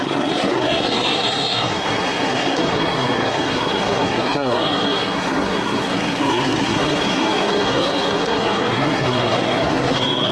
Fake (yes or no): yes